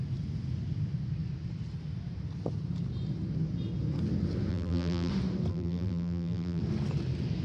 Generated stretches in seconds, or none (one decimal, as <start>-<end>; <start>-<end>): 4.5-5.1; 5.5-6.6